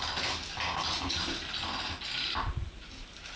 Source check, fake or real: real